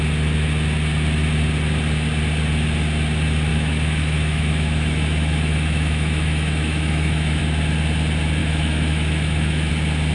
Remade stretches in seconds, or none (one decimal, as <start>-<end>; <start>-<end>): 3.5-7.4; 8.4-9.7